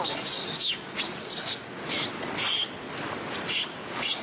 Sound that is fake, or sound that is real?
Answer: real